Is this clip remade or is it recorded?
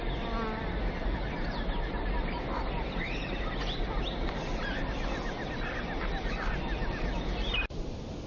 recorded